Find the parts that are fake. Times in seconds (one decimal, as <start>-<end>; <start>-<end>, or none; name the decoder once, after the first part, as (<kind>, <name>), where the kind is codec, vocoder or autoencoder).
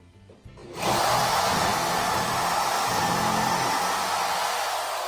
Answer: none